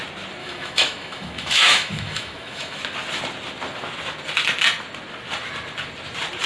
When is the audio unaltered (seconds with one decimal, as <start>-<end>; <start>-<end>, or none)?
0.0-0.4; 2.8-6.5